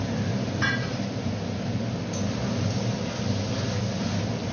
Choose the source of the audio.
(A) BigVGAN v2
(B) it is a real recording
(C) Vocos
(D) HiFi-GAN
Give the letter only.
B